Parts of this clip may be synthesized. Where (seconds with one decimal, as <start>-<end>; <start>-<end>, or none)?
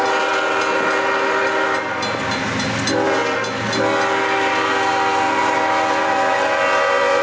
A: none